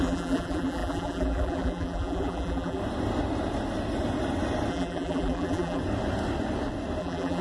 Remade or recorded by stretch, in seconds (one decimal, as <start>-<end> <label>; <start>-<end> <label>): 0.0-2.8 remade; 2.8-4.7 recorded; 4.7-5.8 remade; 5.8-7.0 recorded; 7.0-7.4 remade